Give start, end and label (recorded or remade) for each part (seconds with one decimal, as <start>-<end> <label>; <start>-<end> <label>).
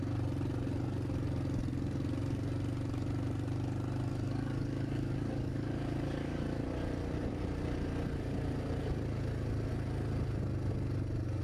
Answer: 0.0-4.1 recorded; 4.1-6.4 remade; 6.4-11.4 recorded